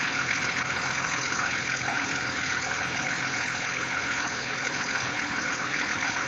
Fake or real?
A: fake